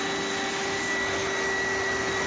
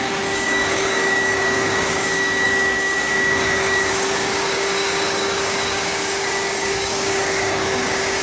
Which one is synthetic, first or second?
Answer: second